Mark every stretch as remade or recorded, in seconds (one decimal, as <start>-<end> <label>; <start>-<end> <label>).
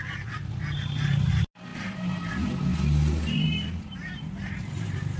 0.0-5.2 recorded